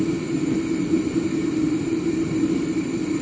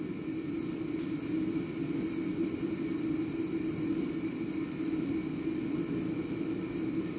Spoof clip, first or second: first